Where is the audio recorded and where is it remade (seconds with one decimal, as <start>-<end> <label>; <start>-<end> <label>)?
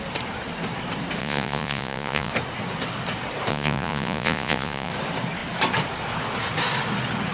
0.0-1.2 recorded; 1.2-2.3 remade; 2.3-3.5 recorded; 3.5-4.9 remade; 4.9-7.3 recorded